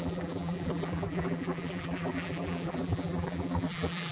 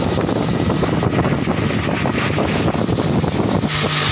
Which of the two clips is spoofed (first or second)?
first